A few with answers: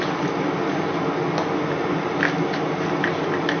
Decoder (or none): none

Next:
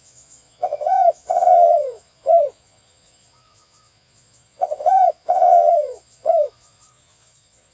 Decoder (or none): vocoder, Vocos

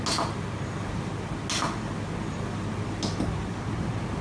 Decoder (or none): none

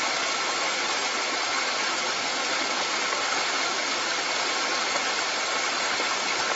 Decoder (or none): none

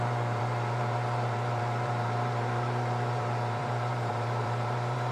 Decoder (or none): vocoder, BigVGAN v2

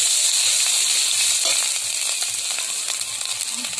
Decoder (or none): none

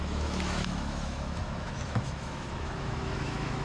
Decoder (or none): autoencoder, DAC-VAE